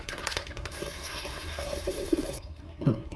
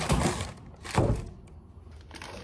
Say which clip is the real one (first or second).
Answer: second